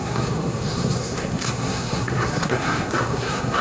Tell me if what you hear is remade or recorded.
remade